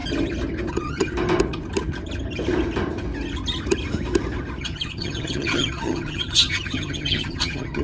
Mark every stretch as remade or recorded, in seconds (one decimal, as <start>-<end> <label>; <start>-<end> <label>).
0.0-0.7 recorded; 0.7-1.1 remade; 1.1-4.6 recorded; 4.6-7.8 remade